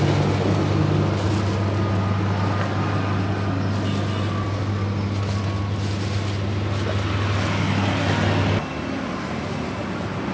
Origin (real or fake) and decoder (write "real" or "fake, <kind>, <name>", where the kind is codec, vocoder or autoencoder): real